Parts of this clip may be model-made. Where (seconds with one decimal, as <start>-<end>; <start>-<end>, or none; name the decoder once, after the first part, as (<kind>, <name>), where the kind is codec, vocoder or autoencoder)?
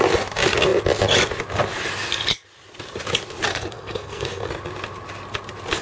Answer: 3.5-4.5 (codec, SNAC)